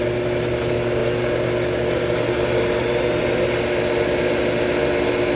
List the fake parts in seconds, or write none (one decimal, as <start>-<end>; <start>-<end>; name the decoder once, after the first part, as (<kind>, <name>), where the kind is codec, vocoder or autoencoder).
none